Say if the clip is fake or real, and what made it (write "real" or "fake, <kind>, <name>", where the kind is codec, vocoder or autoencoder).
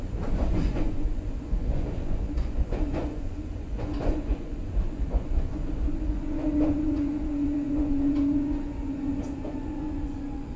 fake, vocoder, Vocos